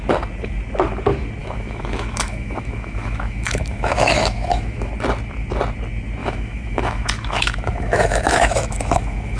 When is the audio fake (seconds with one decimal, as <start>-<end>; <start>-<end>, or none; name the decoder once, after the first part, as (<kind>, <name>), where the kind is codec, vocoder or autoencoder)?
1.4-4.9 (autoencoder, DAC-VAE); 6.2-9.4